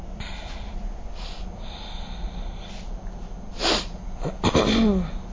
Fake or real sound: real